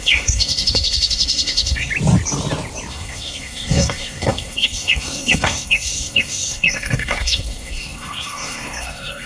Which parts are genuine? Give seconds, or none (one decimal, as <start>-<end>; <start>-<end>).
1.9-2.9